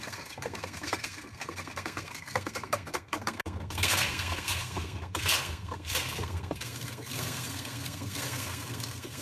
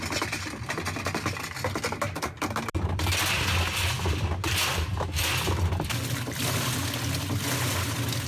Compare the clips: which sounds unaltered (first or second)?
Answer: second